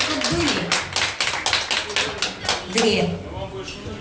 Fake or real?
real